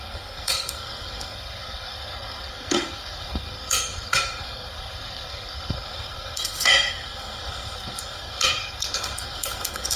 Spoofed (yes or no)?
yes